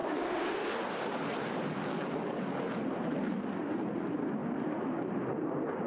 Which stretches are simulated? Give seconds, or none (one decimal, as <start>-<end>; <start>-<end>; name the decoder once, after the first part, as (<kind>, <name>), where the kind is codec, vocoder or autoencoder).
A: 4.4-5.3 (vocoder, BigVGAN v2)